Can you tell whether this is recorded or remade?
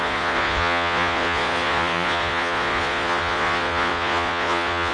remade